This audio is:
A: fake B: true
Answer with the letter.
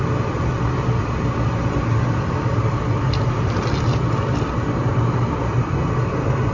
B